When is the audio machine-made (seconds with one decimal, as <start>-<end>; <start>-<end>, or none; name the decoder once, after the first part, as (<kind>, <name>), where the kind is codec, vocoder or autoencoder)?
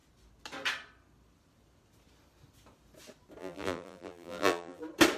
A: 3.4-4.8 (vocoder, BigVGAN v2)